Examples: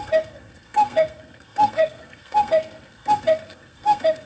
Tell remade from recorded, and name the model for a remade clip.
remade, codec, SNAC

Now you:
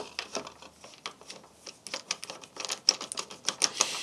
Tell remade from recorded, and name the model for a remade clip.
recorded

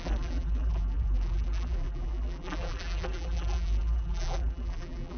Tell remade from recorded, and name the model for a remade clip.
remade, vocoder, BigVGAN v2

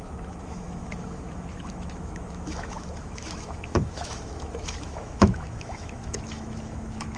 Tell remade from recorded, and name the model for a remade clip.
remade, autoencoder, DAC-VAE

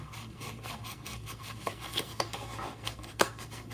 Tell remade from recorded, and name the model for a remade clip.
remade, codec, SNAC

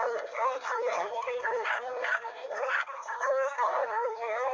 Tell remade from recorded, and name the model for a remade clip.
remade, codec, SNAC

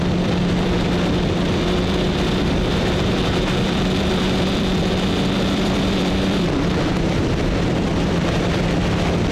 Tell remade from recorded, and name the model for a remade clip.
remade, vocoder, BigVGAN v2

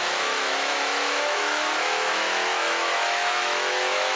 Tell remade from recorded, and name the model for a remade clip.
remade, autoencoder, DAC-VAE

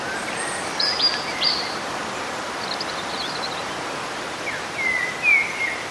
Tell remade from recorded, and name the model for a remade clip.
recorded